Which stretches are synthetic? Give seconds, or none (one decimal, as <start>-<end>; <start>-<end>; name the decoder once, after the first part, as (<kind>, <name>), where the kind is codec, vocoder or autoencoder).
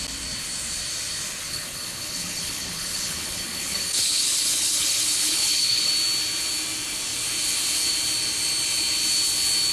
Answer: 1.4-5.9 (codec, HILCodec)